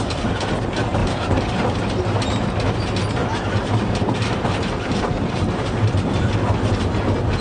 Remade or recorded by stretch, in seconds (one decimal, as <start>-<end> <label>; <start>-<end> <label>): 0.0-1.0 recorded; 1.0-1.7 remade; 1.7-3.2 recorded; 3.2-5.5 remade; 5.5-7.4 recorded